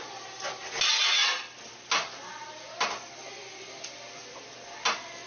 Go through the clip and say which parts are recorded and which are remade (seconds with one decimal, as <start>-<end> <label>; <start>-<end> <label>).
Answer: 0.0-5.3 recorded